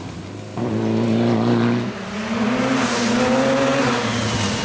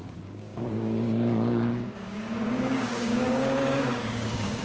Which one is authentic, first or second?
first